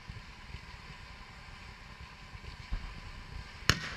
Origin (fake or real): real